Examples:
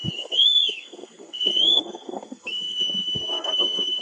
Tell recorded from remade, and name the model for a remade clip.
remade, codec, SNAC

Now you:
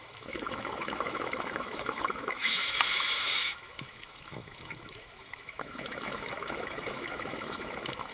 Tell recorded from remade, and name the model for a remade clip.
remade, autoencoder, DAC-VAE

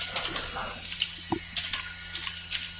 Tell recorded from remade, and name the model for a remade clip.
recorded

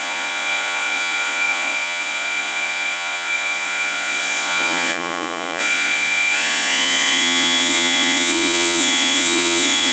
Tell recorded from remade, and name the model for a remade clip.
remade, vocoder, Vocos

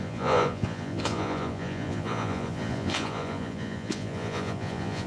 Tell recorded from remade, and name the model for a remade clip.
remade, vocoder, Vocos